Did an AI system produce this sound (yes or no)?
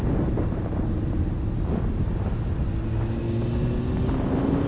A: no